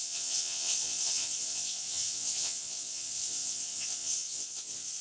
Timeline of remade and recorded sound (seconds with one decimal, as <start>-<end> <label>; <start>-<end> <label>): 0.0-5.0 remade